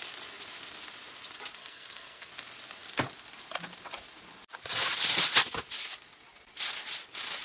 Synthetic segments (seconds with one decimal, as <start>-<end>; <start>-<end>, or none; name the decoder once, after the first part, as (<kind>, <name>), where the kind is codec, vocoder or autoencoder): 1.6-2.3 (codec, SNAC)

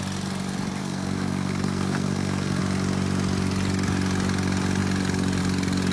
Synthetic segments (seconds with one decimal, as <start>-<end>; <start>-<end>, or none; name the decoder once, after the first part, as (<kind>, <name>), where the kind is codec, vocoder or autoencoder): 0.8-2.6 (codec, SNAC)

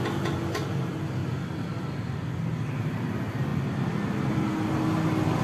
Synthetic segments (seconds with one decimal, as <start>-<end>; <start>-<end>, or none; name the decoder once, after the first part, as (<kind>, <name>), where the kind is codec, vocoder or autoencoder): none

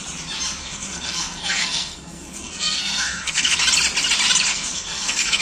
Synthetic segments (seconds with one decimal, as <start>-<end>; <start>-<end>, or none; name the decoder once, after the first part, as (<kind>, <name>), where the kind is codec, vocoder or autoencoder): 0.6-3.6 (codec, SNAC); 4.5-5.4